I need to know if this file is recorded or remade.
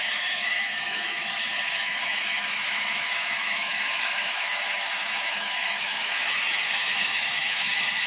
remade